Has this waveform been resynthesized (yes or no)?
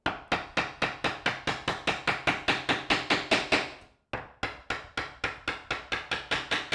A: no